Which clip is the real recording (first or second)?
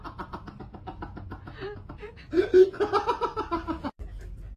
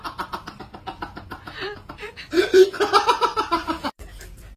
first